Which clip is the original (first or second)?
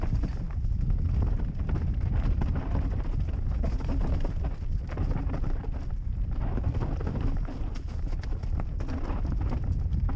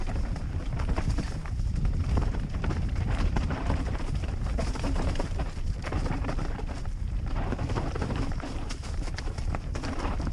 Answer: first